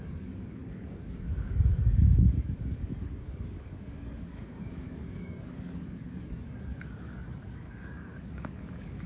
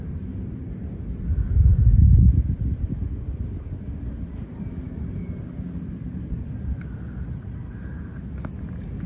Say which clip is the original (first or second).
second